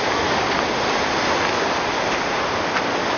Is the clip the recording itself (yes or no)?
yes